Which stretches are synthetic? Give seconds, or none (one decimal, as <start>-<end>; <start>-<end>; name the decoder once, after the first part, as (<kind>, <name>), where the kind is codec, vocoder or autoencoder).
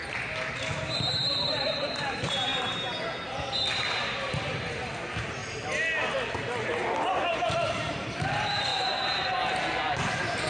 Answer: 0.0-2.5 (vocoder, BigVGAN v2); 4.7-5.4; 7.2-8.7; 10.1-10.5